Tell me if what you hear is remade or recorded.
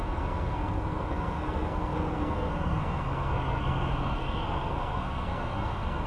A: remade